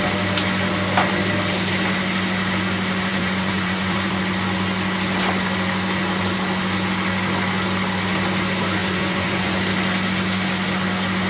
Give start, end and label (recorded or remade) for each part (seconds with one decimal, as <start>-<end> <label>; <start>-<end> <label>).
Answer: 0.0-3.1 recorded; 3.1-4.2 remade; 4.2-8.8 recorded; 8.8-9.6 remade; 9.6-11.3 recorded